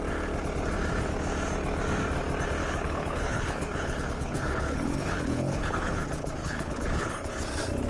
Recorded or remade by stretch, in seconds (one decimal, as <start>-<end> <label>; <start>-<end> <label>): 0.0-2.6 recorded; 2.6-6.0 remade; 6.0-6.4 recorded; 6.4-7.1 remade; 7.1-7.9 recorded